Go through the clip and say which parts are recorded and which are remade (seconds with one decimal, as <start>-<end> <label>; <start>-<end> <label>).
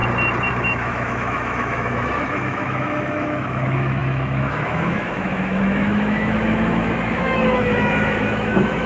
0.0-0.5 recorded; 0.5-8.9 remade